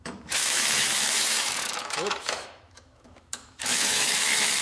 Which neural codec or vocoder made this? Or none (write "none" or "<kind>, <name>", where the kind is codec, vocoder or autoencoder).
autoencoder, DAC-VAE